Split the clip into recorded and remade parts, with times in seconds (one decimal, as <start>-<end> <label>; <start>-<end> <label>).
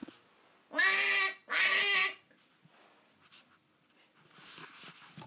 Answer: 0.0-2.0 recorded; 2.0-5.3 remade